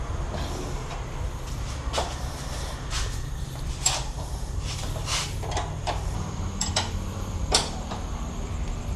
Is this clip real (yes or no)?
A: no